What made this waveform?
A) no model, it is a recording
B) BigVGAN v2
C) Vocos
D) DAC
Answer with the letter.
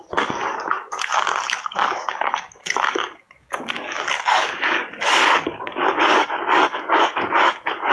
D